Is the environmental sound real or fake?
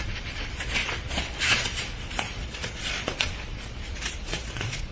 fake